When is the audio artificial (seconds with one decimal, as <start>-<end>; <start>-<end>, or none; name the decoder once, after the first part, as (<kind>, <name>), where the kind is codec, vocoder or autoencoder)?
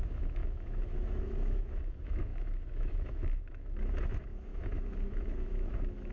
0.0-6.1 (autoencoder, DAC-VAE)